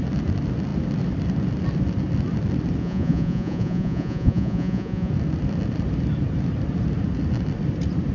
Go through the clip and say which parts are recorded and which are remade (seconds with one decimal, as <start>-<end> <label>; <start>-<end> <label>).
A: 0.0-2.8 recorded; 2.8-5.1 remade; 5.1-8.1 recorded